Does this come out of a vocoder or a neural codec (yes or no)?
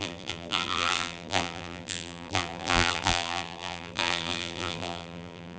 yes